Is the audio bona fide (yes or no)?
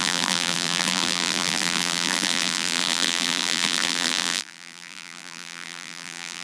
no